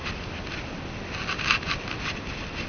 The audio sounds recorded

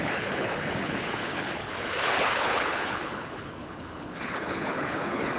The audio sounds remade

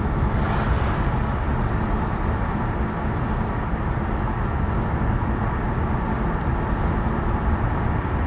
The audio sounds recorded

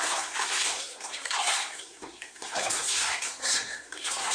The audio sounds remade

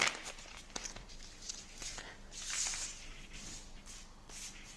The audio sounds recorded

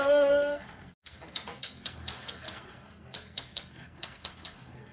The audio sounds remade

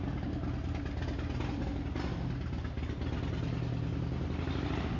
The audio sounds recorded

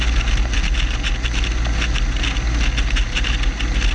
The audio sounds recorded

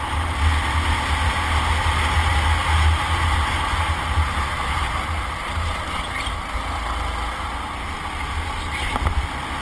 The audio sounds recorded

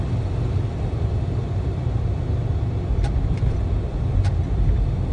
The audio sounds recorded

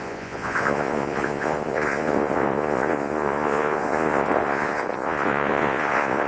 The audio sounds remade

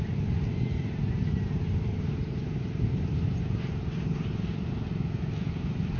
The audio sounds recorded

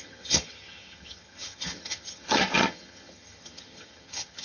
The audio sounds remade